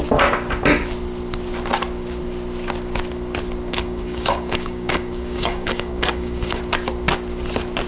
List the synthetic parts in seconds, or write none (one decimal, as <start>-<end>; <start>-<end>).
3.7-6.6